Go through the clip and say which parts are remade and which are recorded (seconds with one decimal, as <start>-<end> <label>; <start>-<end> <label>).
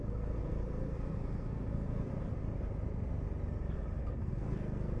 0.0-2.1 remade; 2.1-4.0 recorded; 4.0-5.0 remade